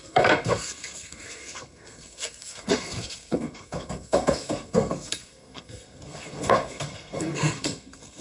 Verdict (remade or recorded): remade